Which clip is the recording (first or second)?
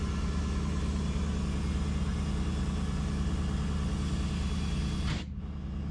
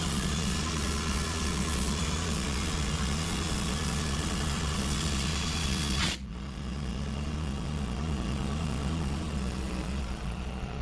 first